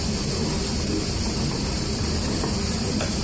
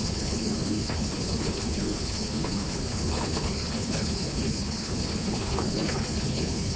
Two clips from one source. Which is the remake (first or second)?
second